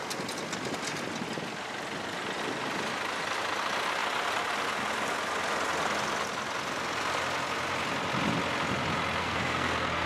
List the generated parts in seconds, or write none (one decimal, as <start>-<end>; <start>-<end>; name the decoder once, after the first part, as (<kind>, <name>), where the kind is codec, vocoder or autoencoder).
9.2-10.1 (codec, SNAC)

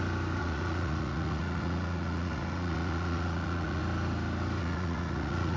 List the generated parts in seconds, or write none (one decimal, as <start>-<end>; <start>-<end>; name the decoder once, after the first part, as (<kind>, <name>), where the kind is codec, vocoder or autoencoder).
0.4-3.8 (vocoder, Vocos); 4.6-5.6

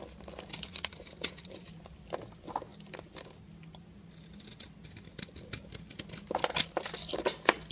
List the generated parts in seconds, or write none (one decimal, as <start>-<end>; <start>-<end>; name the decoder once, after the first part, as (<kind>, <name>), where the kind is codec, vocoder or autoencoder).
0.7-1.7 (vocoder, Vocos)

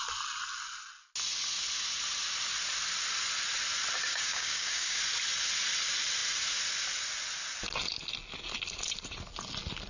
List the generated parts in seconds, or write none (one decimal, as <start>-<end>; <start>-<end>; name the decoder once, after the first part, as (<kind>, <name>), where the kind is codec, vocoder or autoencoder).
4.1-5.0 (codec, DAC)